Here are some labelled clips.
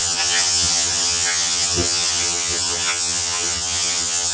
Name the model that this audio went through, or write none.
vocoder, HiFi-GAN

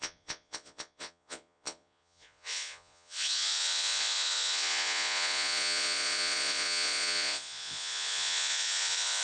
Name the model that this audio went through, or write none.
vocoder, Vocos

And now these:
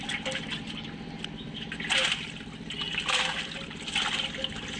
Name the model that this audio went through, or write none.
none